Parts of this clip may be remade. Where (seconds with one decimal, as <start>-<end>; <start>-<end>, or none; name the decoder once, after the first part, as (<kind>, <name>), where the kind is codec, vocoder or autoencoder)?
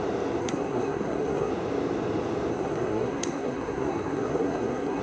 0.4-1.5 (codec, SNAC); 2.5-5.0